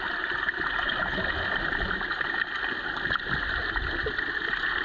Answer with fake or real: real